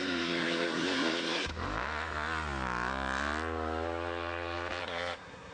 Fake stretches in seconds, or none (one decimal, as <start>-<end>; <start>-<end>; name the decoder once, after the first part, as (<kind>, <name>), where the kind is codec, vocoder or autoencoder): 0.0-1.5 (codec, SNAC); 4.8-5.5